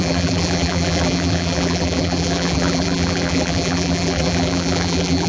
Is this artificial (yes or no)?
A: yes